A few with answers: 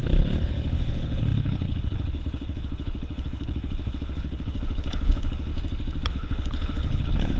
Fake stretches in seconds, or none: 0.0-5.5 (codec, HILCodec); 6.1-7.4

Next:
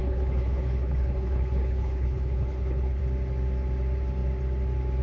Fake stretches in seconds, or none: 0.0-3.0 (codec, HILCodec)

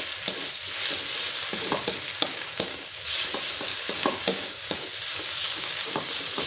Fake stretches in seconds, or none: 2.1-3.0 (codec, DAC); 3.7-4.9; 5.4-6.0

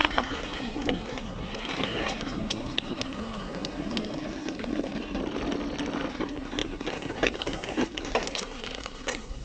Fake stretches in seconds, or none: 0.0-5.2 (codec, SNAC); 6.1-9.4

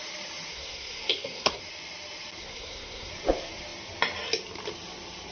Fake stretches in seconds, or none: 0.5-1.6 (codec, SNAC); 2.4-3.1

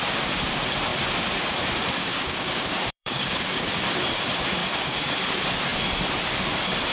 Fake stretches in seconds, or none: 2.0-3.7 (codec, DAC); 4.6-5.1

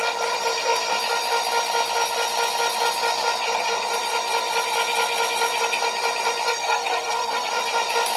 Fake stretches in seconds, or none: 6.5-7.5 (codec, SNAC)

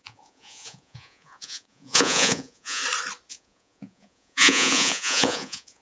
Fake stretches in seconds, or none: 0.0-2.8 (vocoder, Vocos); 3.3-5.8